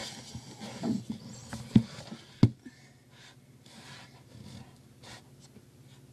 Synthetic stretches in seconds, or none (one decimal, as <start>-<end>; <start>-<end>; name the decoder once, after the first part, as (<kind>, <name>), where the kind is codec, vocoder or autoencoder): none